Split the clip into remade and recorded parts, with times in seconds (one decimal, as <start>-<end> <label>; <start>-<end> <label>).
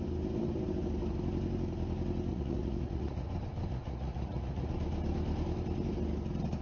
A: 0.0-2.3 recorded; 2.3-3.3 remade; 3.3-3.7 recorded; 3.7-4.7 remade; 4.7-6.6 recorded